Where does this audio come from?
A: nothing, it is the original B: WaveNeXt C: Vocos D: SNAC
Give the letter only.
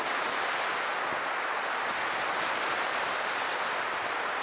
A